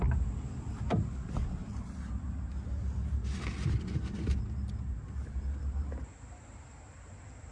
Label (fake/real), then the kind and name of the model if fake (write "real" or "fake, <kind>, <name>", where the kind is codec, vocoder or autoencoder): real